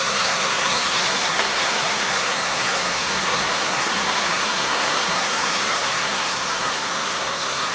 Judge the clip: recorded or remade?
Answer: remade